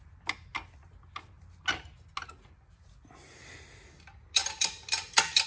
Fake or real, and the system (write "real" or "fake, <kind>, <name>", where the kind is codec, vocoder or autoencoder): real